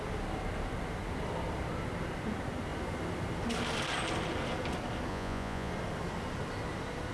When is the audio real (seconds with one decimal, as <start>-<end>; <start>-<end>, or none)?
0.0-5.1; 5.7-7.1